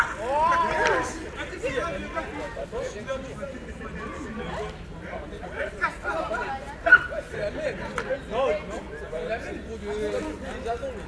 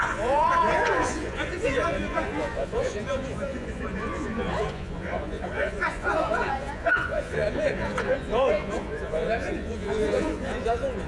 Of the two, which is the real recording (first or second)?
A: first